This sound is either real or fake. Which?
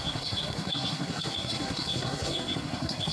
fake